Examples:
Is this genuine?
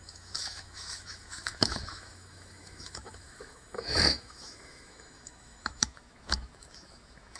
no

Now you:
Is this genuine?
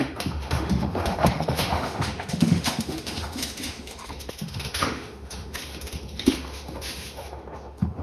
no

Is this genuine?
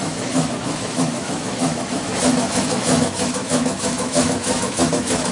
no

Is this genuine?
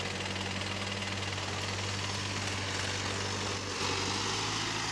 yes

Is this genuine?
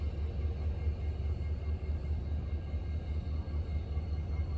yes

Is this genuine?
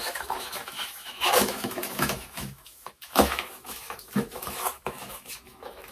no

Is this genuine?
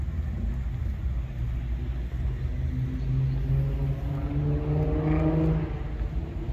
yes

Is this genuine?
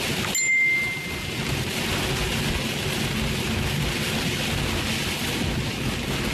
yes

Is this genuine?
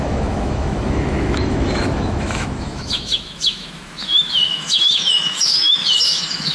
no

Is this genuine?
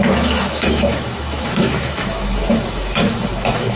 no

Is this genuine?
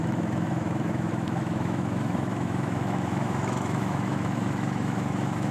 no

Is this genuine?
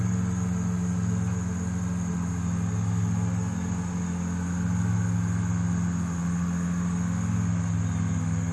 yes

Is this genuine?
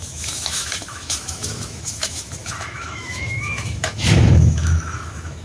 no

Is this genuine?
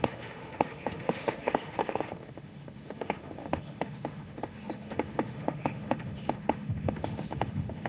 no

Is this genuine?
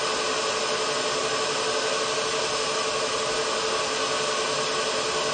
yes